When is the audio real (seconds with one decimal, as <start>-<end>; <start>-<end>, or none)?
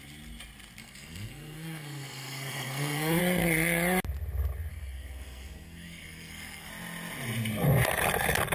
0.0-0.8; 3.2-4.7; 6.7-8.5